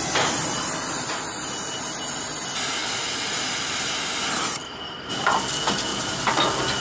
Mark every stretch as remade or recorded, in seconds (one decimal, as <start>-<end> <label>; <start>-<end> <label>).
0.0-4.6 recorded; 4.6-5.5 remade; 5.5-5.9 recorded; 5.9-6.8 remade